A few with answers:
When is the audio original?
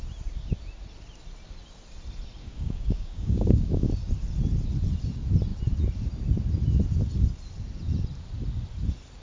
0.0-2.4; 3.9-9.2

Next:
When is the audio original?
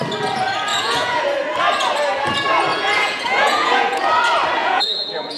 0.0-0.7; 1.2-2.7; 4.0-4.6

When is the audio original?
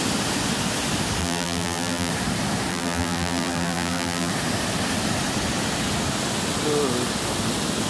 0.0-1.2; 2.1-2.7; 4.3-7.9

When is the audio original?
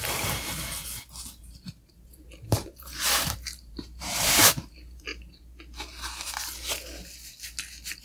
0.8-1.4; 5.1-8.0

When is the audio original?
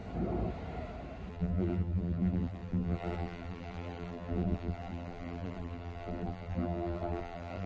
0.0-1.3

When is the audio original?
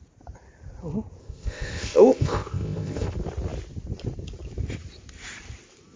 0.0-1.2; 3.1-6.0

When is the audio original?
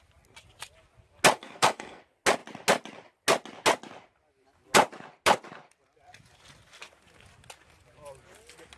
0.0-1.4; 2.0-8.8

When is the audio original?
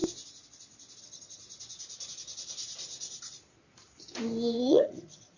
0.0-1.0; 1.4-4.6